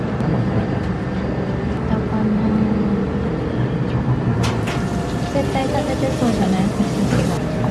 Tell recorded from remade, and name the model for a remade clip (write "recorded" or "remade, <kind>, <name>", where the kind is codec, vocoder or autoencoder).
remade, vocoder, BigVGAN v2